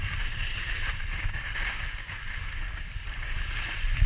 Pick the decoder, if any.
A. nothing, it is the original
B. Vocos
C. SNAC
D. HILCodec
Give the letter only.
A